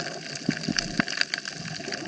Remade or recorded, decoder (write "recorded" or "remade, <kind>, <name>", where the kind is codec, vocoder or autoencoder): recorded